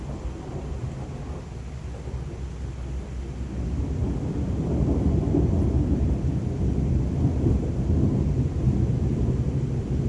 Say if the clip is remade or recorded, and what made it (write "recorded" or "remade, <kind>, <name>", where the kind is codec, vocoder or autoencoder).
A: recorded